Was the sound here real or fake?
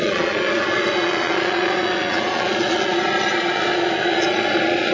fake